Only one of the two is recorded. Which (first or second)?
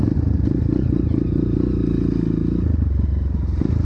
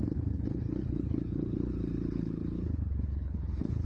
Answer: first